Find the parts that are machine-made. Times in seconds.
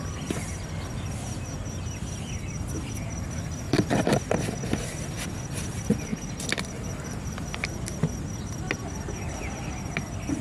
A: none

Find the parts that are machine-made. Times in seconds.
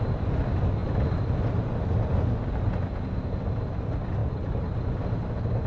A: 4.2-4.9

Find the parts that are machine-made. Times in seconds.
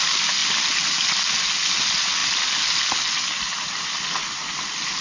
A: 2.2-2.8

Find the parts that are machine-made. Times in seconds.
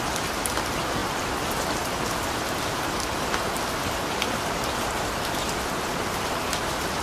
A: none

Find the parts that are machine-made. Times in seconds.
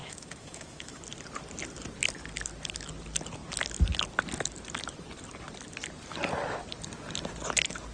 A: 0.0-1.0